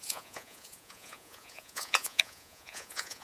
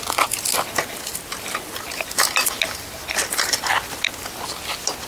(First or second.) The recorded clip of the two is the second